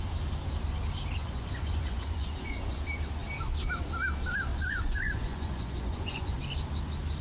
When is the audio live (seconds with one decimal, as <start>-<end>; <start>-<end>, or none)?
0.0-1.2; 2.8-4.5; 6.4-7.2